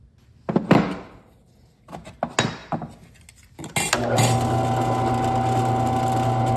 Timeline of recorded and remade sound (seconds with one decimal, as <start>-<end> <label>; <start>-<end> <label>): 0.0-6.6 recorded